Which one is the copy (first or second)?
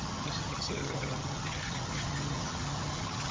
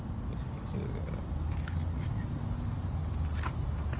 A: first